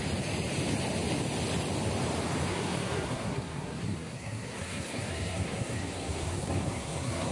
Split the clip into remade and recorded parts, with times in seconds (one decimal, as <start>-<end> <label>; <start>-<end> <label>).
0.0-2.5 recorded; 2.5-7.3 remade